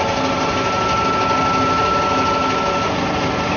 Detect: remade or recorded recorded